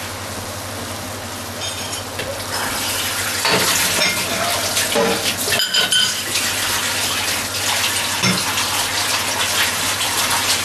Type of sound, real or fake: real